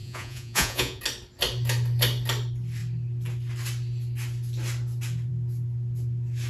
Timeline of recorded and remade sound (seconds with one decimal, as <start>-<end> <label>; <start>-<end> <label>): 0.0-1.0 remade; 1.0-6.5 recorded